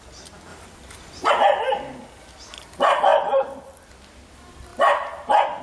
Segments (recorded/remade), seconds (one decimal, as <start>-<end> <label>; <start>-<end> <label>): 0.0-0.5 recorded; 0.5-1.3 remade; 1.3-3.1 recorded; 3.1-3.9 remade; 3.9-5.6 recorded